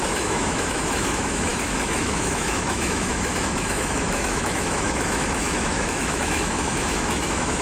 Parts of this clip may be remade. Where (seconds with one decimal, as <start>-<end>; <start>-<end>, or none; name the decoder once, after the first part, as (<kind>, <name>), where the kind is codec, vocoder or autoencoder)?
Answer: 0.0-7.6 (autoencoder, DAC-VAE)